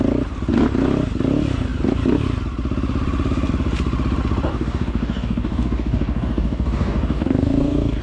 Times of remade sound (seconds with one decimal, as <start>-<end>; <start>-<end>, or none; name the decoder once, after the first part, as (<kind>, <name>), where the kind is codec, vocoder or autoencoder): 4.5-8.0 (codec, DAC)